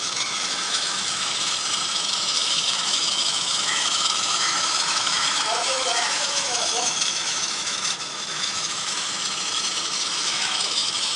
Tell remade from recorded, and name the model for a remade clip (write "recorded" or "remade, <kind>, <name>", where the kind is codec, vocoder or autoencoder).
remade, autoencoder, DAC-VAE